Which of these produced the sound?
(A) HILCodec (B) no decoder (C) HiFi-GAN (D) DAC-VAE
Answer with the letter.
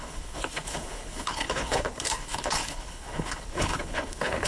A